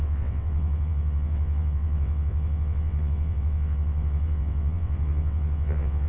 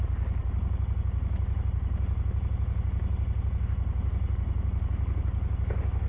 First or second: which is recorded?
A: second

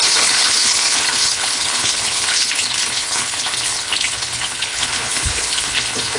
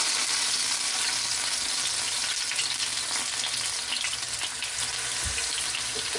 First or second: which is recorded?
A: second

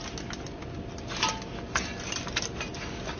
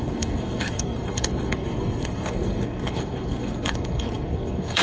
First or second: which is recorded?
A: first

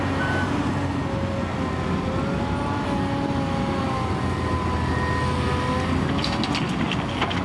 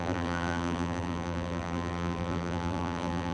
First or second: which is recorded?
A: first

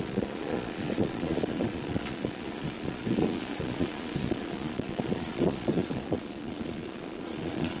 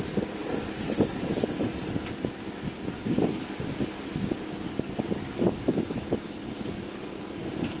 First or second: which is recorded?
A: second